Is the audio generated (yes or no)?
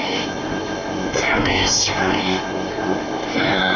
yes